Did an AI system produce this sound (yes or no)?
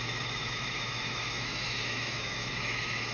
yes